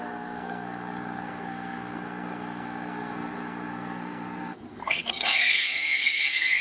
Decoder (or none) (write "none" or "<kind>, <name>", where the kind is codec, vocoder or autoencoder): codec, SNAC